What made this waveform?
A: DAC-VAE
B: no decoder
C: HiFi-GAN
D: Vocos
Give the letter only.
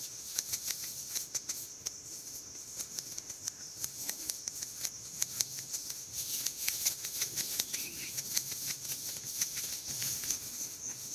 A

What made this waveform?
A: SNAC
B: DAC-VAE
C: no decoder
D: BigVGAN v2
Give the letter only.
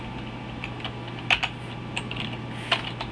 C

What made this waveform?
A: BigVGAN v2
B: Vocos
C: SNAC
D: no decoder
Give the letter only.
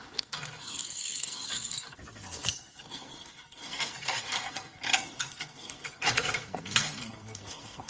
C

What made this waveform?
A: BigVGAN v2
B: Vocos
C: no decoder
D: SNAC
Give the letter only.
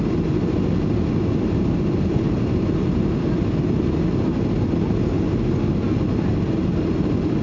C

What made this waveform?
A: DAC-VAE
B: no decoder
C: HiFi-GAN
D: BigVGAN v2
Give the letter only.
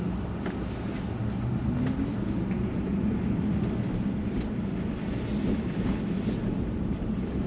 B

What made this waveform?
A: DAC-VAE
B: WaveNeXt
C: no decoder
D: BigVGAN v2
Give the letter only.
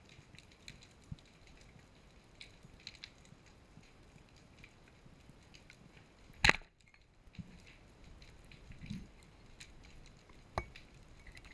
C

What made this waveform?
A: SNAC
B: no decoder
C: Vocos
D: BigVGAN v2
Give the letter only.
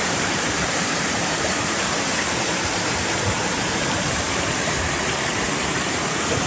D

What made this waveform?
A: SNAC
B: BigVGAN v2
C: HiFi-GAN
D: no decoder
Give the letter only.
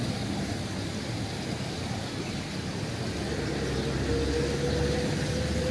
D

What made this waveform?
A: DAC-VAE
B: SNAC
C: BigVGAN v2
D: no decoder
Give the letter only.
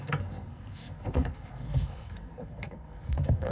B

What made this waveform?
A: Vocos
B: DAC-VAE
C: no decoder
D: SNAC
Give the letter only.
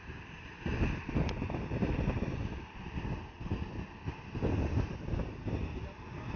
C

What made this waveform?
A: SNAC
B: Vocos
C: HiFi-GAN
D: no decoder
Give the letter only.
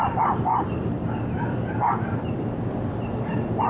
D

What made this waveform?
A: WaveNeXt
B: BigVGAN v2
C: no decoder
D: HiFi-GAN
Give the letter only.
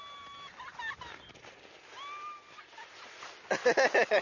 C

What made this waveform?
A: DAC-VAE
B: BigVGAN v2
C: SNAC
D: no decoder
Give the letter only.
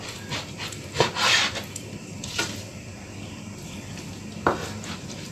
B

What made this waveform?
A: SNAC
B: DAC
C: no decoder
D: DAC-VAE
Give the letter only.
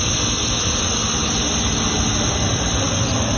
C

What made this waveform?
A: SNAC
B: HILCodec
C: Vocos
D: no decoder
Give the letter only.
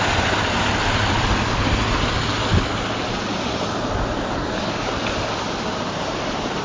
D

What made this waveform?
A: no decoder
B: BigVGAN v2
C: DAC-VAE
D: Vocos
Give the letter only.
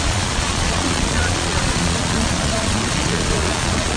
D